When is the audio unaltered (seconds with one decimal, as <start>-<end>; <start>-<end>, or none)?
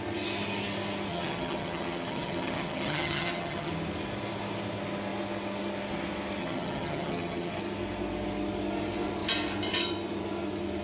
0.0-1.1; 3.7-6.4; 7.6-10.8